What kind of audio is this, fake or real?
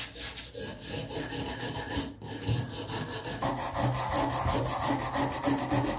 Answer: real